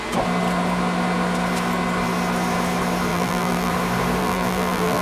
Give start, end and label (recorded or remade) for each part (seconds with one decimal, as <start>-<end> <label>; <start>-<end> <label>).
0.0-3.1 recorded; 3.1-3.7 remade; 3.7-4.2 recorded; 4.2-5.0 remade